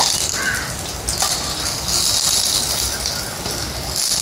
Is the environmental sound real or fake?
real